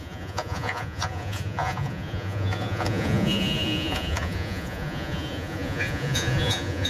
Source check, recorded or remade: remade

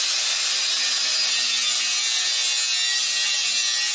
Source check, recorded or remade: recorded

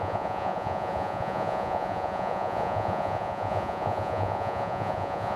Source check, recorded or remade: remade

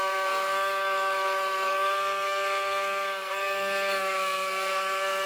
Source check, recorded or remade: remade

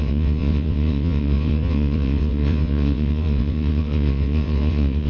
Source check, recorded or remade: remade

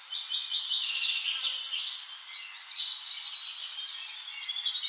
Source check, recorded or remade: recorded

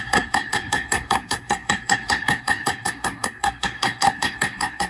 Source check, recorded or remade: remade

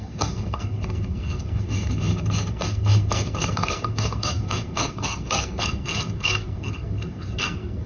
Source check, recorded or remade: remade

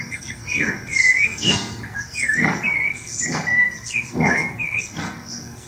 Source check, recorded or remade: remade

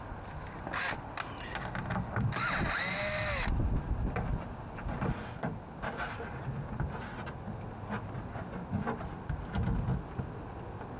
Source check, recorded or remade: recorded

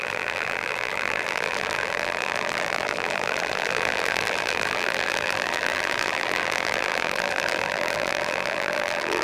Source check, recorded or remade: remade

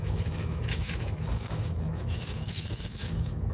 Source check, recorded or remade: remade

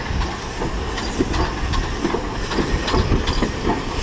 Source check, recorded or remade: recorded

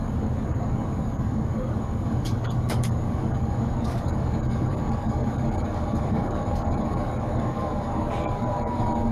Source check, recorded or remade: remade